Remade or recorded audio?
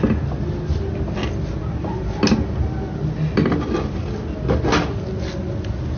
recorded